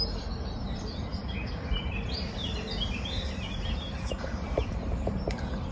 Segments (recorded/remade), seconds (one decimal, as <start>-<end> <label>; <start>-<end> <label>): 0.0-5.7 remade